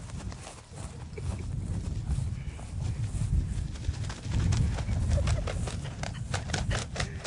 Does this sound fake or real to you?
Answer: real